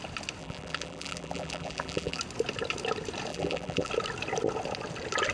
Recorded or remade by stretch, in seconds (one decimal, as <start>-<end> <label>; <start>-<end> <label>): 0.0-0.4 recorded; 0.4-2.2 remade; 2.2-3.3 recorded; 3.3-3.9 remade; 3.9-5.3 recorded